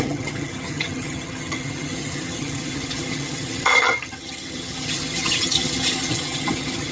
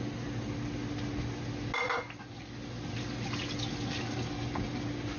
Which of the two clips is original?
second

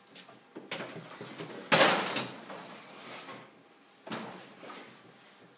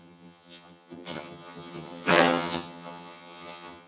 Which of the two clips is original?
first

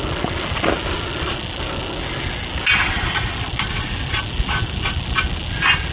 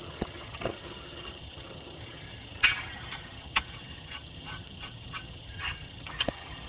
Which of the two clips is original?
first